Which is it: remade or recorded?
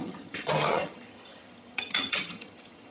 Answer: remade